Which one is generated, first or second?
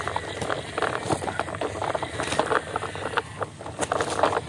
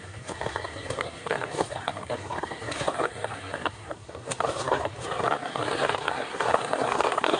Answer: second